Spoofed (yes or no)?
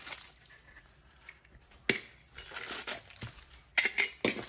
no